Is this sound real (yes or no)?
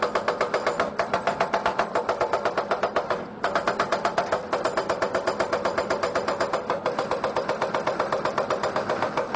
no